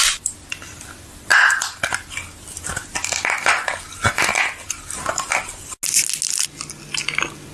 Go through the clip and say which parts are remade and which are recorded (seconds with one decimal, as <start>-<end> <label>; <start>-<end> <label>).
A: 0.0-7.5 recorded